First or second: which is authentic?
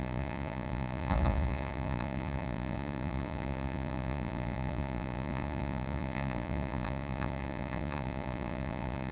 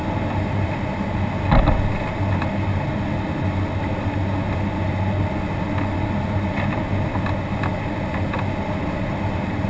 second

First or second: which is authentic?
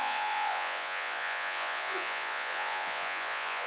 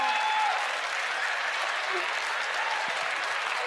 second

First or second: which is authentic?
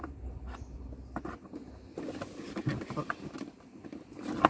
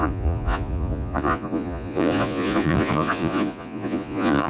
first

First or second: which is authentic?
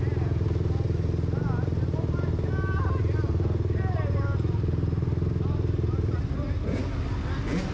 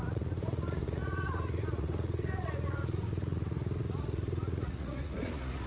first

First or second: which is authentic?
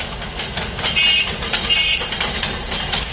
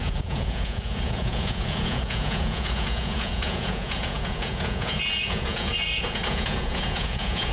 first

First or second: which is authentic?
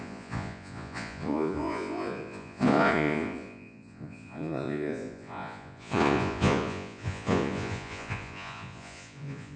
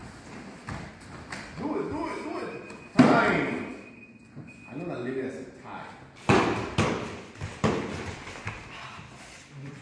second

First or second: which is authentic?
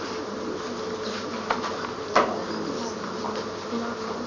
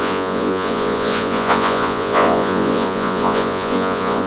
first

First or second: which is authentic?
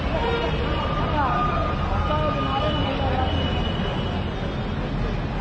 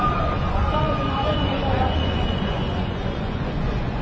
first